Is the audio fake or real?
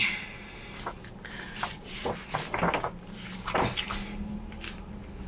real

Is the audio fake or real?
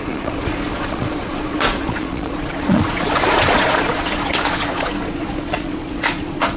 fake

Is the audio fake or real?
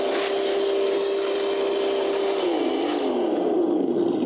real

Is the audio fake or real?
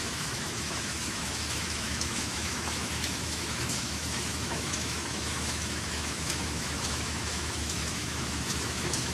fake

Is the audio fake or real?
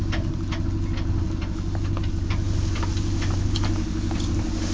real